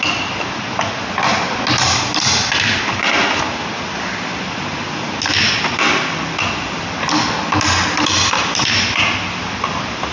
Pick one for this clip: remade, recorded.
recorded